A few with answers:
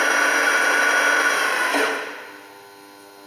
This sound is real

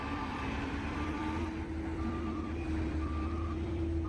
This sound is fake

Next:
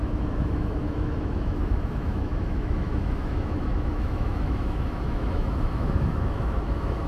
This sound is fake